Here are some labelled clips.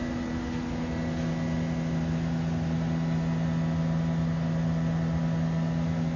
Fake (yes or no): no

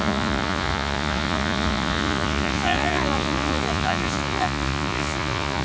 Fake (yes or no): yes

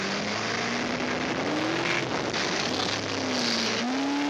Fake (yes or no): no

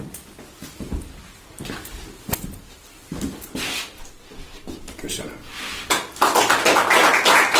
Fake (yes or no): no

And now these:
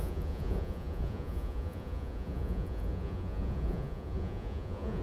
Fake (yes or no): yes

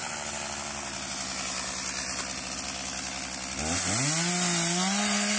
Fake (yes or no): no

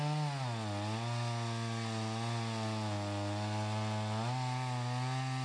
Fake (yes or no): no